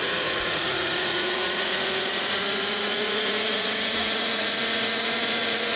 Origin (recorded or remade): remade